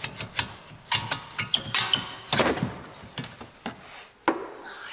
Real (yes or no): yes